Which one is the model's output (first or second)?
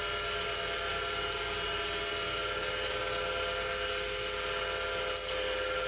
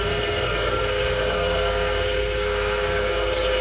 second